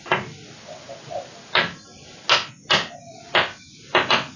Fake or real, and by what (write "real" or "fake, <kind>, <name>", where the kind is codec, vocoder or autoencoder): real